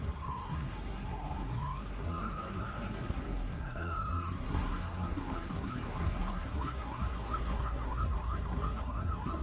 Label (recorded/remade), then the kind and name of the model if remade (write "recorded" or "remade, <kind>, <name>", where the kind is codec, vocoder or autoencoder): remade, codec, SNAC